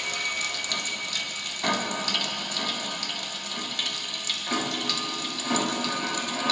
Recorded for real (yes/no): yes